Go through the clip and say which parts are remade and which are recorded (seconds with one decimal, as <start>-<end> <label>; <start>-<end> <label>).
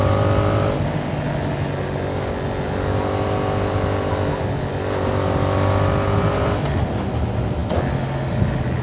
0.0-8.8 recorded